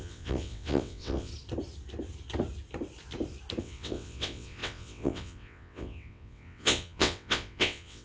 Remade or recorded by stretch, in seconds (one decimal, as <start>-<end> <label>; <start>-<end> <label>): 0.0-1.3 remade; 1.3-3.6 recorded; 3.6-8.0 remade